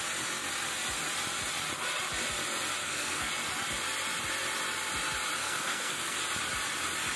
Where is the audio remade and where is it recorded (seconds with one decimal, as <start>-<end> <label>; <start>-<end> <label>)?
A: 0.0-2.8 recorded; 2.8-3.3 remade; 3.3-5.4 recorded; 5.4-6.2 remade; 6.2-7.2 recorded

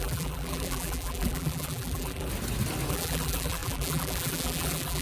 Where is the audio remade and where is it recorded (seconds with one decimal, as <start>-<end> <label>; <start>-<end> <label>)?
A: 0.0-2.3 remade; 2.3-2.9 recorded; 2.9-5.0 remade

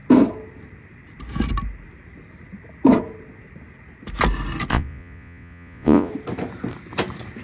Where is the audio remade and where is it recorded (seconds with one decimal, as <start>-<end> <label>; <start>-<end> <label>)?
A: 0.0-4.7 recorded; 4.7-6.1 remade; 6.1-7.4 recorded